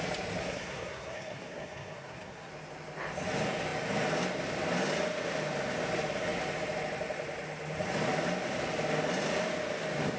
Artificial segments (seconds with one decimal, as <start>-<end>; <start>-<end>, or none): 0.4-2.5